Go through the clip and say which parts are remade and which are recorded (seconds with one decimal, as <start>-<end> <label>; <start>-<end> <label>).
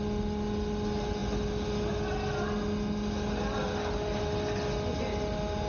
0.0-5.7 recorded